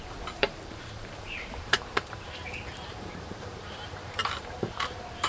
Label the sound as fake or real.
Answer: fake